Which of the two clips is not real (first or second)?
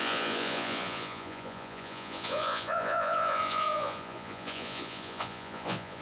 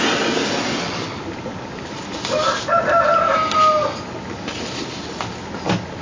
first